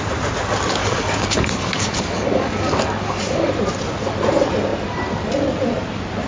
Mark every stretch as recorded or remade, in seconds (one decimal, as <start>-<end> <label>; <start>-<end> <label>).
0.0-0.8 recorded; 0.8-3.5 remade; 3.5-6.3 recorded